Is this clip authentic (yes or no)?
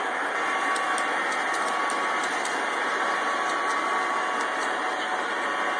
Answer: yes